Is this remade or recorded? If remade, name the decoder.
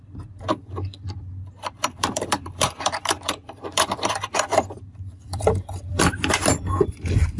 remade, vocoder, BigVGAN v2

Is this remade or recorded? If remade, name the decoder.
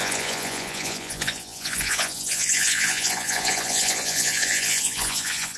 remade, vocoder, Vocos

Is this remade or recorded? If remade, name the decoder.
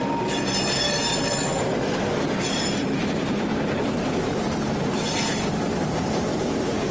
remade, vocoder, BigVGAN v2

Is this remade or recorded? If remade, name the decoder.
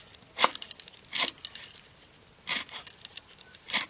recorded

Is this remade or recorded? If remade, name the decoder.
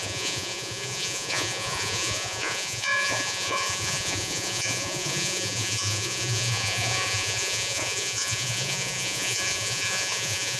remade, vocoder, Vocos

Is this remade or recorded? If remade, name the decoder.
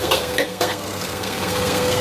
remade, codec, SNAC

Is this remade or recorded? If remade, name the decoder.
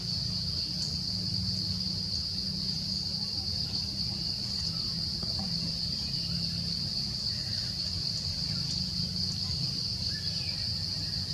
recorded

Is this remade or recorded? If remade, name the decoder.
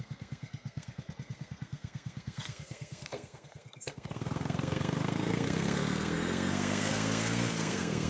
remade, codec, SNAC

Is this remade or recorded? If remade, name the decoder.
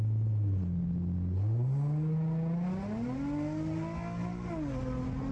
recorded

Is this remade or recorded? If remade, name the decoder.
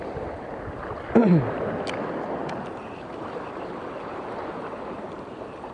recorded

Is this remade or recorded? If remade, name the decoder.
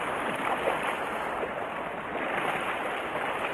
remade, vocoder, BigVGAN v2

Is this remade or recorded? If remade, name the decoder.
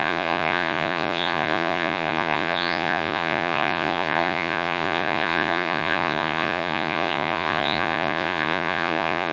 remade, vocoder, Vocos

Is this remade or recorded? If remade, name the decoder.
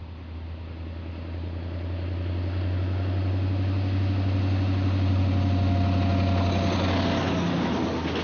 recorded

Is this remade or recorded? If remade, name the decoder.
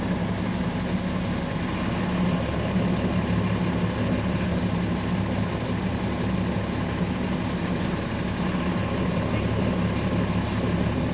recorded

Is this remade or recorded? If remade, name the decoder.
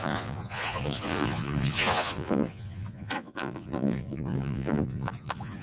remade, vocoder, Vocos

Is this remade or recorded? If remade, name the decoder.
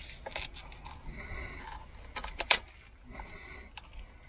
recorded